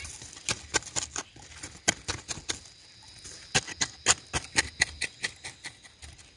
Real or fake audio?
real